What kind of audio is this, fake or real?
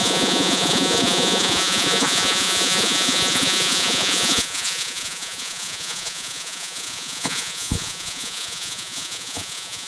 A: fake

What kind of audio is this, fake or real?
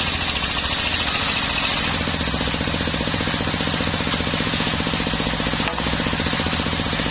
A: real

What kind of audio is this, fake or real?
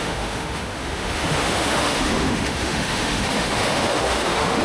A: fake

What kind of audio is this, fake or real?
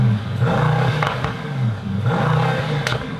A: fake